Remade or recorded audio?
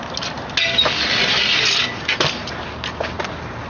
recorded